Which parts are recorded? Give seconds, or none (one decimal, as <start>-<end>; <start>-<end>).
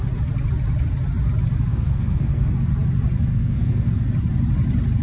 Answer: 0.0-1.7; 2.5-3.3; 3.9-5.0